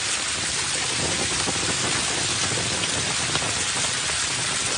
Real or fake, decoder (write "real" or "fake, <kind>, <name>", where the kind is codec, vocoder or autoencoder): real